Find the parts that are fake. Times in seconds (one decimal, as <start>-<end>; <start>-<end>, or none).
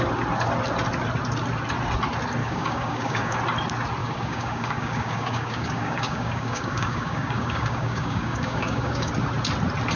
2.4-3.4; 4.0-9.1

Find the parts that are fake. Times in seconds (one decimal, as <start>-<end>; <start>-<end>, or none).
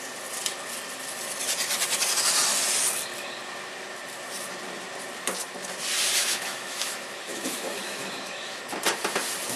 6.2-8.6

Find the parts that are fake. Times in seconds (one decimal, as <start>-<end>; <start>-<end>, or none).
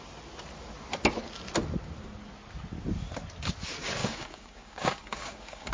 4.0-5.7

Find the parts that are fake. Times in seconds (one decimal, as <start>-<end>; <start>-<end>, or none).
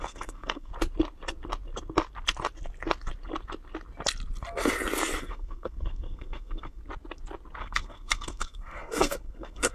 0.0-0.7; 5.2-6.8; 7.6-9.7